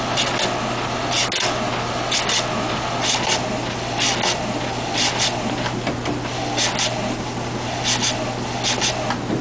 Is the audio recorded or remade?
recorded